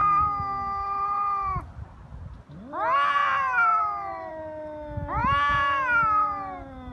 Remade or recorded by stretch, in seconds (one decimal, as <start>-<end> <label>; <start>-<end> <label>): 0.0-6.9 recorded